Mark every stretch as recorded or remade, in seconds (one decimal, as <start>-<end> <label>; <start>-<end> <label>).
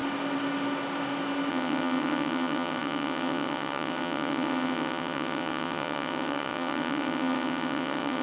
0.0-1.5 recorded; 1.5-8.2 remade